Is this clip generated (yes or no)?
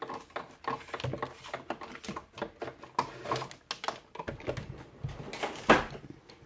no